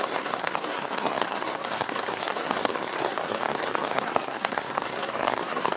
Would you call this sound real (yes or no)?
no